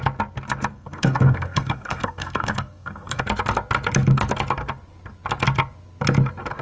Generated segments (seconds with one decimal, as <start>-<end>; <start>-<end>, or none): 0.7-3.2